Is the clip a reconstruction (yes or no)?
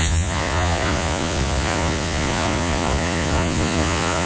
yes